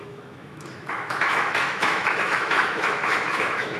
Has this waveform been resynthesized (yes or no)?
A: yes